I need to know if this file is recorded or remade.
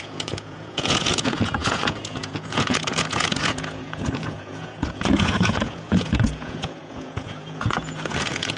remade